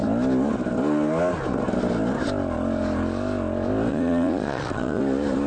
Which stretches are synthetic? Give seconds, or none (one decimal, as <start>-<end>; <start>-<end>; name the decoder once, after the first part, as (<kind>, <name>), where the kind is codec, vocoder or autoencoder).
3.9-5.0 (vocoder, Vocos)